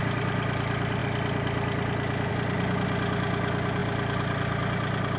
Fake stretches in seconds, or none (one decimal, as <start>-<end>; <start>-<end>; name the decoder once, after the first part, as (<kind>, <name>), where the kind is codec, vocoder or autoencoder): none